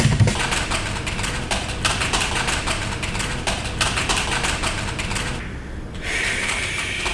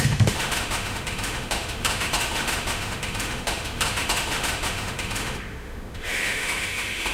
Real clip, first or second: first